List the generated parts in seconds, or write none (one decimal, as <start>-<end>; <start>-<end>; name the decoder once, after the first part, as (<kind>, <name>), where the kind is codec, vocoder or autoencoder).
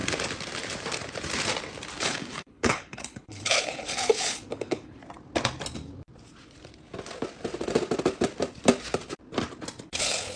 2.0-5.0 (codec, HILCodec); 9.8-10.4